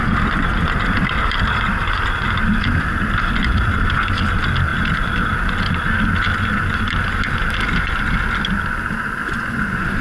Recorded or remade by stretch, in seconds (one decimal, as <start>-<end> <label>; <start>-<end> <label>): 0.0-9.2 recorded; 9.2-10.0 remade